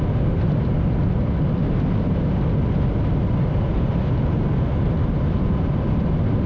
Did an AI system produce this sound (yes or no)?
no